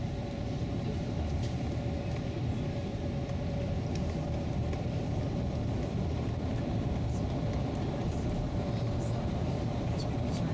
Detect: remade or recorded remade